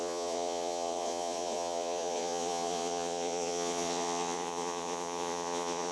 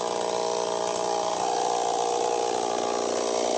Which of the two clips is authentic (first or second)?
second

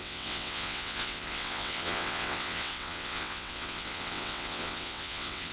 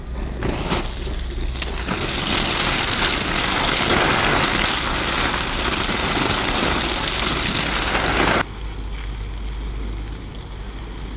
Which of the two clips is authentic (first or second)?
second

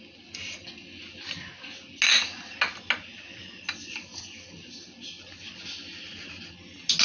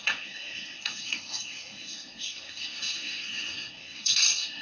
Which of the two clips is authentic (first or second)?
first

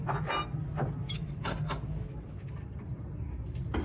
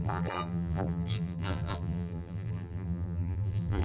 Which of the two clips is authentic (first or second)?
first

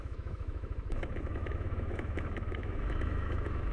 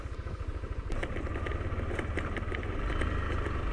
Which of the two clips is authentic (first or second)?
second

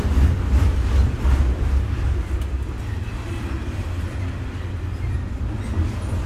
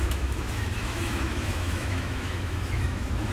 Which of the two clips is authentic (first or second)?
first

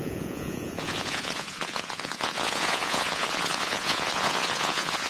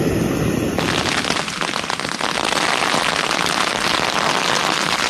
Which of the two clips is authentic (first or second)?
second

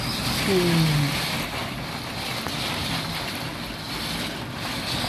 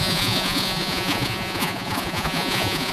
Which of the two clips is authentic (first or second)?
first